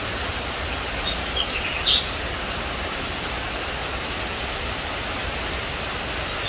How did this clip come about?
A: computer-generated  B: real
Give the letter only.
B